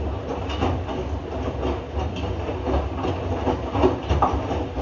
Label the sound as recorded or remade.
recorded